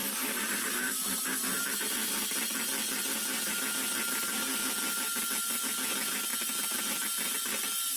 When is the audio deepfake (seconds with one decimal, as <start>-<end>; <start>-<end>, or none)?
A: 0.0-2.1